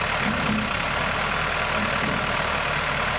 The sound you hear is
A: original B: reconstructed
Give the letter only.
A